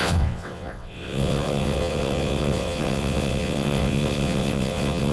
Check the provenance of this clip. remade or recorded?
remade